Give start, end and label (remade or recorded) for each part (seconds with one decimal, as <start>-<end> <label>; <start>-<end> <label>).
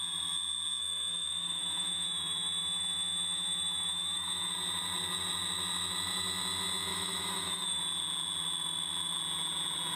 0.0-0.8 recorded; 0.8-4.5 remade; 4.5-6.9 recorded; 6.9-7.8 remade; 7.8-10.0 recorded